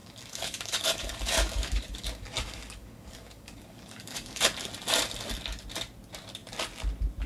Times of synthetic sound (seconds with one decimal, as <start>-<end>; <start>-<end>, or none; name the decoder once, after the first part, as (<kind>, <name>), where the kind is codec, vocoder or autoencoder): 0.0-4.4 (codec, DAC)